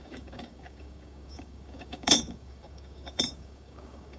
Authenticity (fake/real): fake